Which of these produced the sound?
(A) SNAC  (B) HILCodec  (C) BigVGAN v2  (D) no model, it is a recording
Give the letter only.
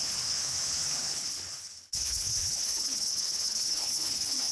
B